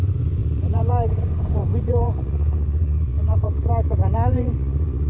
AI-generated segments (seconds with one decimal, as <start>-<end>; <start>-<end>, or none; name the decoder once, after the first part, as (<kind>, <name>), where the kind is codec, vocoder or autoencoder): 0.0-5.1 (vocoder, Vocos)